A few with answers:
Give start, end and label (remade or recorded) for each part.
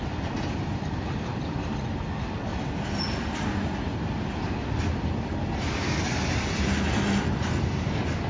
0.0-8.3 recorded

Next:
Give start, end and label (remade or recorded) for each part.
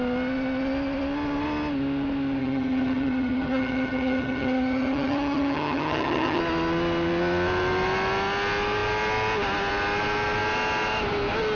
0.0-2.4 recorded; 2.4-6.4 remade; 6.4-11.6 recorded